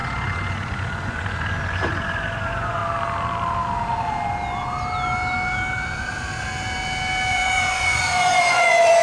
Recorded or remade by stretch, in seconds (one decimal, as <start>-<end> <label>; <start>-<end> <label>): 0.0-2.8 remade; 2.8-7.3 recorded; 7.3-9.0 remade